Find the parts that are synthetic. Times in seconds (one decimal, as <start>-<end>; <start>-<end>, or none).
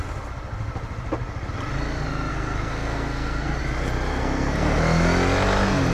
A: 2.3-3.6; 4.1-4.8